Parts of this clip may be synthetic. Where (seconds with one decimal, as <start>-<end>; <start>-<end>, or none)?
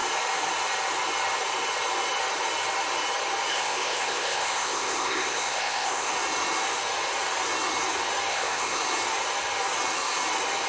3.5-6.1; 8.3-8.8